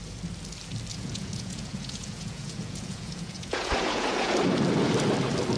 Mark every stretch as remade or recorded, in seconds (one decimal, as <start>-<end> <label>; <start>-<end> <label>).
0.0-0.9 recorded; 0.9-4.3 remade; 4.3-5.6 recorded